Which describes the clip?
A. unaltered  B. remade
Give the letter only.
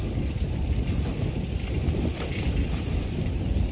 B